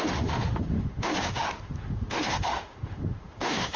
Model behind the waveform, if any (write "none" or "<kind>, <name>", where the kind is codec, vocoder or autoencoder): autoencoder, DAC-VAE